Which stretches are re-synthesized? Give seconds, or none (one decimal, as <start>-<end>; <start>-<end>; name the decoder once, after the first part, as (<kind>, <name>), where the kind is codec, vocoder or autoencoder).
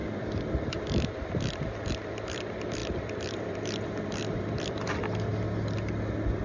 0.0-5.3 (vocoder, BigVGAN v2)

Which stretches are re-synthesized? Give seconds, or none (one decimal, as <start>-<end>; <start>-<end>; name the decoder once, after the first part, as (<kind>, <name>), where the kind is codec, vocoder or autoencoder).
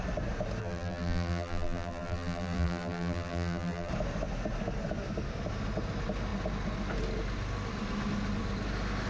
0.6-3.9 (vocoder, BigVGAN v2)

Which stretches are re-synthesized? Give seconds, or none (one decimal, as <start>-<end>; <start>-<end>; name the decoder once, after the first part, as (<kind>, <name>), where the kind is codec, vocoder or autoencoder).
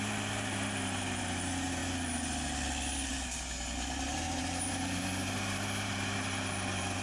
0.0-1.8 (vocoder, BigVGAN v2); 3.1-7.0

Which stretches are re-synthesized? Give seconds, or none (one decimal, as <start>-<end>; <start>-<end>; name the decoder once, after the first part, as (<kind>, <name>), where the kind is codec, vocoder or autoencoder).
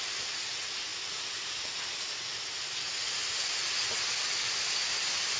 0.9-2.0 (vocoder, BigVGAN v2)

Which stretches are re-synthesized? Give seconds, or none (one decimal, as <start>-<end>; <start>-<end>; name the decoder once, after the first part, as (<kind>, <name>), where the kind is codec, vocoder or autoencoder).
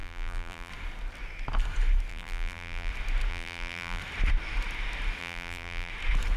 0.0-0.7 (vocoder, BigVGAN v2); 2.1-2.9; 3.3-4.0; 5.2-5.9